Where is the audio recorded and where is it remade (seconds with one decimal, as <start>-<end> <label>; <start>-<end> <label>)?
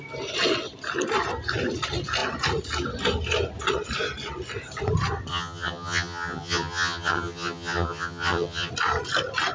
0.0-5.3 recorded; 5.3-8.7 remade; 8.7-9.5 recorded